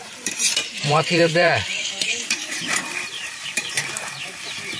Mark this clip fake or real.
fake